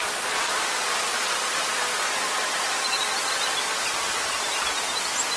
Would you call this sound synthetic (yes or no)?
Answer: no